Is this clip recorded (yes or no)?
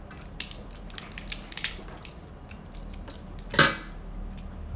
yes